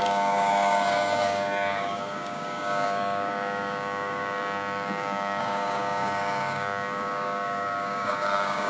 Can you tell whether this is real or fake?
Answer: fake